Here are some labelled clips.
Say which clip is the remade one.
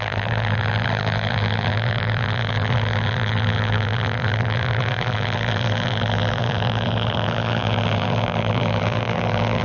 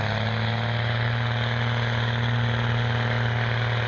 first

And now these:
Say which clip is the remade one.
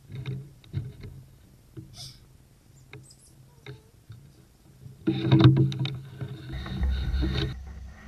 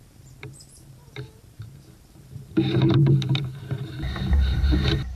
second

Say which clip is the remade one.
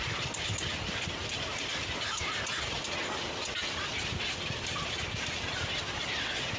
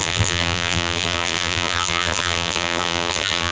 second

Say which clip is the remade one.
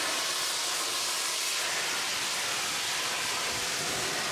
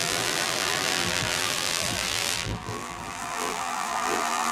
second